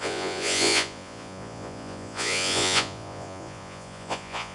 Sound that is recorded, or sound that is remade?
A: remade